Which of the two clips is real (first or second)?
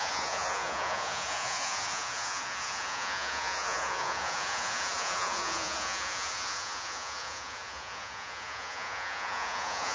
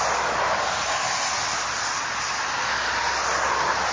second